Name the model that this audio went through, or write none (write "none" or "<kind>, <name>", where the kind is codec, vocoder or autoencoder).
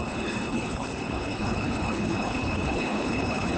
codec, HILCodec